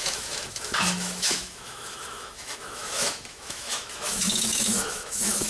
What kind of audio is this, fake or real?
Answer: fake